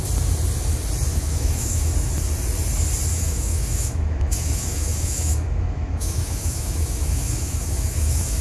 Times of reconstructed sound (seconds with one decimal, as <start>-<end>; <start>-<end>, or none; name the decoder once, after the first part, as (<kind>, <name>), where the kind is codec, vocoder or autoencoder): 1.1-1.9 (autoencoder, DAC-VAE); 3.1-8.4